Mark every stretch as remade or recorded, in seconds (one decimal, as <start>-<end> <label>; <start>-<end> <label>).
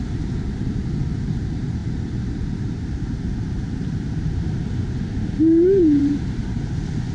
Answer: 0.0-7.1 remade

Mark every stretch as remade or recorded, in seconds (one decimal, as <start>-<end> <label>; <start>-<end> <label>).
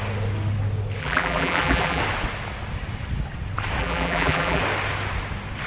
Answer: 0.0-1.0 recorded; 1.0-2.0 remade; 2.0-3.8 recorded; 3.8-4.6 remade; 4.6-5.7 recorded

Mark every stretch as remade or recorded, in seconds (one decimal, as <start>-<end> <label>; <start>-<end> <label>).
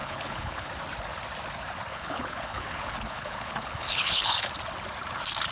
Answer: 0.0-0.7 remade; 0.7-1.9 recorded; 1.9-4.5 remade; 4.5-5.5 recorded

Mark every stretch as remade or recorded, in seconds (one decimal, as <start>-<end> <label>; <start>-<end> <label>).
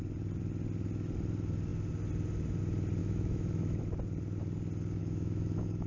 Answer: 0.0-3.0 recorded; 3.0-3.8 remade; 3.8-5.0 recorded; 5.0-5.9 remade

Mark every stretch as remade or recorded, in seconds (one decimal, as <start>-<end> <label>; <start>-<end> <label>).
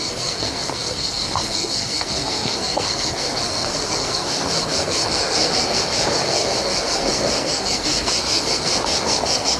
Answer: 0.0-9.6 remade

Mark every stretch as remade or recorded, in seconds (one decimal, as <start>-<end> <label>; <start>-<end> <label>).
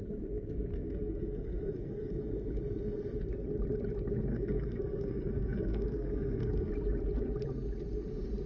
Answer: 0.0-0.7 recorded; 0.7-2.1 remade; 2.1-4.3 recorded; 4.3-6.7 remade; 6.7-8.5 recorded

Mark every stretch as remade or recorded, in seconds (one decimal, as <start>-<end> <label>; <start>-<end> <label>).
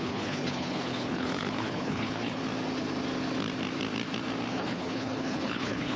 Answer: 0.0-2.4 remade; 2.4-4.5 recorded; 4.5-6.0 remade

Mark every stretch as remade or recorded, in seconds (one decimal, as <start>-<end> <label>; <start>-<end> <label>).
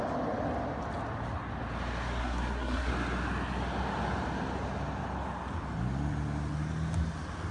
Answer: 0.0-2.2 recorded; 2.2-2.9 remade; 2.9-7.5 recorded